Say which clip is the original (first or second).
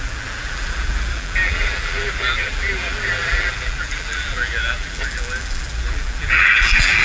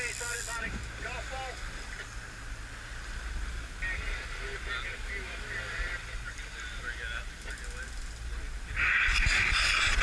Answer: second